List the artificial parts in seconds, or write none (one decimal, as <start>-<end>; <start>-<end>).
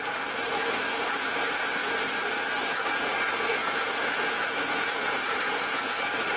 3.6-5.8